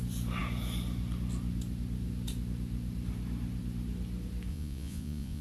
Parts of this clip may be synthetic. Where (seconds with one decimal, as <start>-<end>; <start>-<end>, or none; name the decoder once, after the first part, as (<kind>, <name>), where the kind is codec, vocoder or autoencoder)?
4.5-5.4 (vocoder, Vocos)